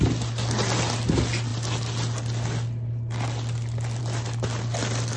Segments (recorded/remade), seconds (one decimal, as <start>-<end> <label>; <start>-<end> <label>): 0.0-5.2 recorded